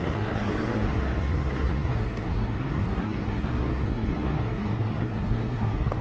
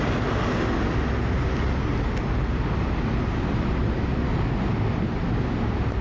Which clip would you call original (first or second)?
second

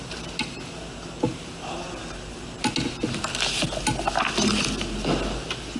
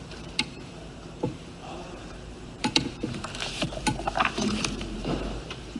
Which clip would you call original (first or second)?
first